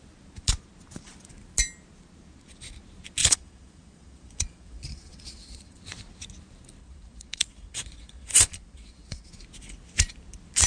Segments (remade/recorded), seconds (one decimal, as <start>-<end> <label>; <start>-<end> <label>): 0.0-3.2 recorded; 3.2-5.8 remade; 5.8-6.8 recorded; 6.8-9.3 remade; 9.3-10.7 recorded